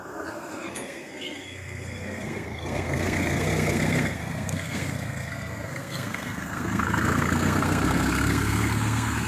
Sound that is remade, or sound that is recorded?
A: remade